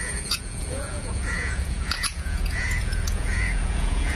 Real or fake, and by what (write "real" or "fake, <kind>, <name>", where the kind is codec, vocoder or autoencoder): fake, vocoder, Vocos